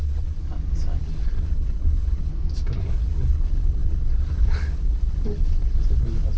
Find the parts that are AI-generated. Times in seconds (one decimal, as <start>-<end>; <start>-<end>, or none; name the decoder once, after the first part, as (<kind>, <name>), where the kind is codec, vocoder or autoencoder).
0.0-0.4 (codec, HILCodec); 1.0-2.3; 2.8-6.4

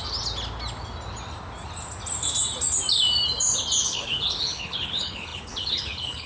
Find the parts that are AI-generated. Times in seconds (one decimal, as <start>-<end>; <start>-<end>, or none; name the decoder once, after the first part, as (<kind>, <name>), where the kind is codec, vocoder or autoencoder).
3.8-6.3 (codec, HILCodec)

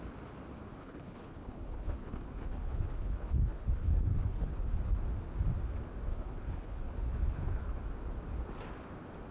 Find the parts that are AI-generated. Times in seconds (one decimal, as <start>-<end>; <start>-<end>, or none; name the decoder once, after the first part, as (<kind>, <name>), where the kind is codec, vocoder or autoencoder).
0.8-4.8 (codec, HILCodec); 6.1-7.8

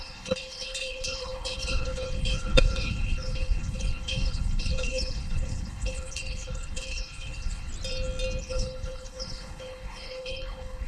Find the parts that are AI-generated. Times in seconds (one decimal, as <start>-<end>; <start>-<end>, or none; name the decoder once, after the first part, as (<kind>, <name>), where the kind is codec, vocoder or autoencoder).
0.0-7.7 (codec, HILCodec); 8.4-10.9

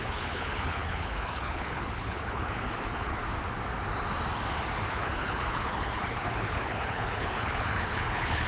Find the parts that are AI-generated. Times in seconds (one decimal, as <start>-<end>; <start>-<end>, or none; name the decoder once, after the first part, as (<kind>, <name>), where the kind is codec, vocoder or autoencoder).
0.0-3.2 (codec, HILCodec); 4.9-8.5

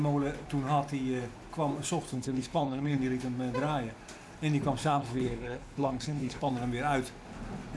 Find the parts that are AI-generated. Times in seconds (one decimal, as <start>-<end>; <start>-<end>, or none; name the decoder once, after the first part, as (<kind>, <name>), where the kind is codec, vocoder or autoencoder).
2.1-3.0 (codec, HILCodec); 4.8-6.5

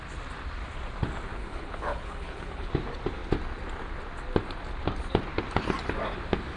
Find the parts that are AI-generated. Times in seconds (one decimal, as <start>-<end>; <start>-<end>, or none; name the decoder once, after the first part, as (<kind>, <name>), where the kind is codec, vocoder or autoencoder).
1.4-2.7 (codec, HILCodec)

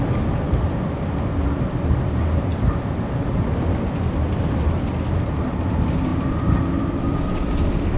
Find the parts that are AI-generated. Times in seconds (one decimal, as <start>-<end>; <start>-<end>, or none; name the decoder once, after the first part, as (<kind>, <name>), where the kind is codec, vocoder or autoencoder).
none